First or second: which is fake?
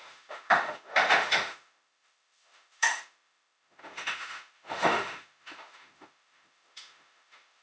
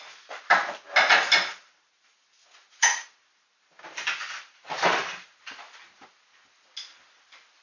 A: first